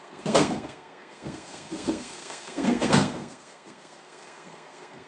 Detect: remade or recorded remade